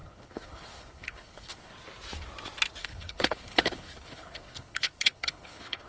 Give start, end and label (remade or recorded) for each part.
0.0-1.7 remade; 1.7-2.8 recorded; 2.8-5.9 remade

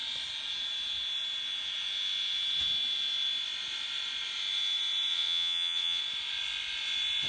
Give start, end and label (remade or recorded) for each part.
0.0-5.1 recorded; 5.1-6.0 remade; 6.0-7.3 recorded